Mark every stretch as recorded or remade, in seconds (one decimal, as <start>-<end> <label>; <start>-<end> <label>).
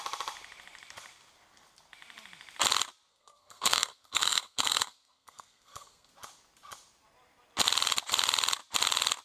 0.0-3.1 recorded; 3.1-6.1 remade; 6.1-9.2 recorded